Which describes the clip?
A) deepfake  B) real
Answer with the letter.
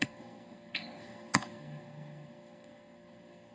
A